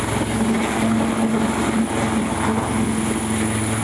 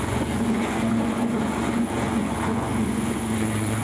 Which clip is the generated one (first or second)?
second